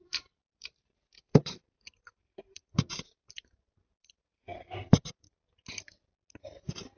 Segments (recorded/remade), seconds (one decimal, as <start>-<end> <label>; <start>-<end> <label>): 0.0-5.6 remade; 5.6-7.0 recorded